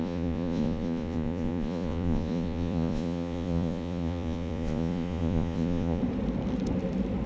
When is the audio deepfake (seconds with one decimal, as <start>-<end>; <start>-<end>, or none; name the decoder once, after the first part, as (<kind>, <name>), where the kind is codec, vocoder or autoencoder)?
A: 0.0-6.0 (vocoder, Vocos)